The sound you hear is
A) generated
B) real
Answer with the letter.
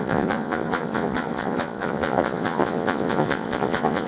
A